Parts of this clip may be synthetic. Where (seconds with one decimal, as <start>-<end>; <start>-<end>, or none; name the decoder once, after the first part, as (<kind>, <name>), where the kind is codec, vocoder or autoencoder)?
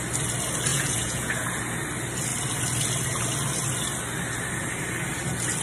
0.7-1.3 (vocoder, Vocos)